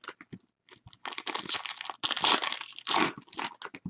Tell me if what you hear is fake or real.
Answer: real